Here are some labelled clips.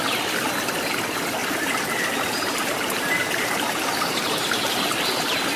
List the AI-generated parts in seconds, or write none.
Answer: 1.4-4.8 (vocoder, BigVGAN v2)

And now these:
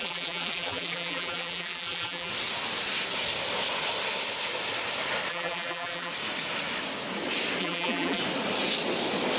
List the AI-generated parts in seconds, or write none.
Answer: 0.0-2.3 (vocoder, BigVGAN v2); 5.3-6.1; 7.6-8.2

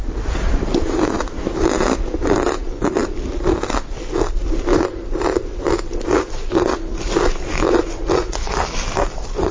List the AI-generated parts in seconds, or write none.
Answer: 3.0-5.7 (vocoder, BigVGAN v2)

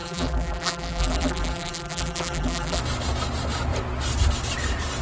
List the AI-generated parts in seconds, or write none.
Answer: 0.0-2.8 (vocoder, BigVGAN v2)

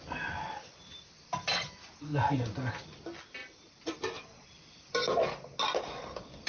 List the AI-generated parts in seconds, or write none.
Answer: 3.4-4.0 (vocoder, BigVGAN v2)

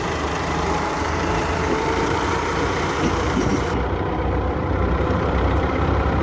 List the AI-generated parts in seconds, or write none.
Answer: 0.0-6.2 (vocoder, BigVGAN v2)

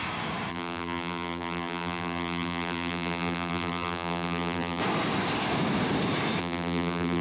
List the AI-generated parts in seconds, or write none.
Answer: 0.5-4.8 (vocoder, BigVGAN v2); 6.4-7.2